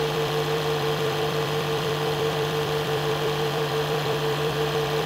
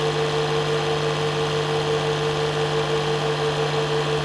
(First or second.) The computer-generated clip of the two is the first